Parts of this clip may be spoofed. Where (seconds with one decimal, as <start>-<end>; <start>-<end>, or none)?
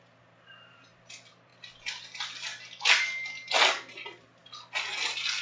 0.0-1.5; 2.0-2.5; 3.9-5.4